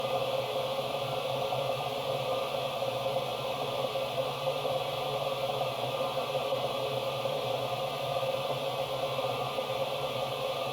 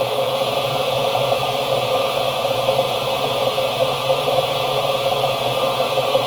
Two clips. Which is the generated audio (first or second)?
second